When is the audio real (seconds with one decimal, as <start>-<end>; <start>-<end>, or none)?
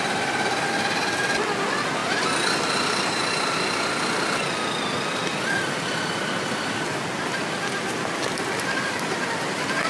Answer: 0.0-9.9